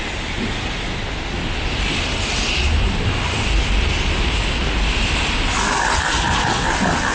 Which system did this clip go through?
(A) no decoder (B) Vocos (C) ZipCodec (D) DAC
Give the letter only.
A